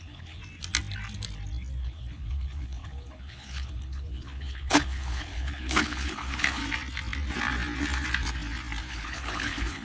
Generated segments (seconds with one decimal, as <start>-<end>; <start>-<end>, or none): 0.0-0.4; 1.8-6.6; 8.8-9.8